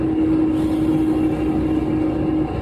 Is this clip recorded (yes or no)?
yes